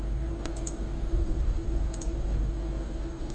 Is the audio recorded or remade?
remade